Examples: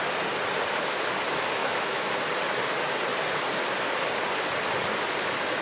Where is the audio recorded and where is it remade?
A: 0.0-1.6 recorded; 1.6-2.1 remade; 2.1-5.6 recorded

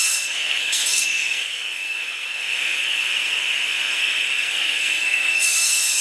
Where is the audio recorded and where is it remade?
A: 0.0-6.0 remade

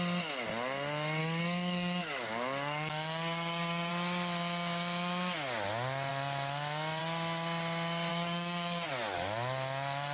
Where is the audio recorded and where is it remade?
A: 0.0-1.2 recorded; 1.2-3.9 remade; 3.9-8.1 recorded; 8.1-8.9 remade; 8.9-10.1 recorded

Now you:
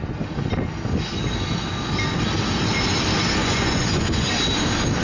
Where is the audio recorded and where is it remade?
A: 0.0-3.4 recorded; 3.4-4.3 remade; 4.3-5.0 recorded

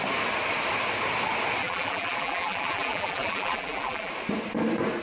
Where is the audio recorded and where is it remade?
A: 0.0-1.6 recorded; 1.6-4.1 remade; 4.1-5.0 recorded

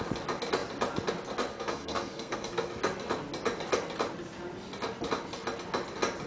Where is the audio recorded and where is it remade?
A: 0.0-1.5 recorded; 1.5-2.7 remade; 2.7-6.3 recorded